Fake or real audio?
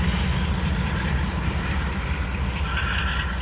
real